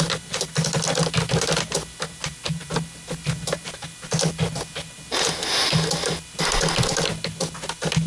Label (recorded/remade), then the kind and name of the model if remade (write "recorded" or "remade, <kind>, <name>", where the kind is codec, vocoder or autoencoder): recorded